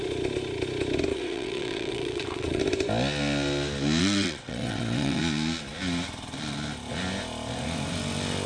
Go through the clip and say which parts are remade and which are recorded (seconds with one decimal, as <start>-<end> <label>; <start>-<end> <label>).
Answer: 0.0-1.1 recorded; 1.1-2.6 remade; 2.6-4.0 recorded; 4.0-5.2 remade; 5.2-8.5 recorded